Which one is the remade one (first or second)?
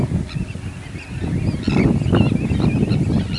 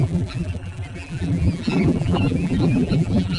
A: second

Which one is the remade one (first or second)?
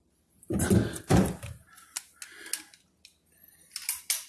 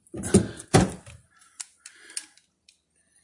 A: second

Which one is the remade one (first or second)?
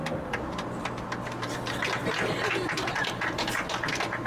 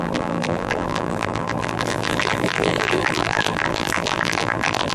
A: second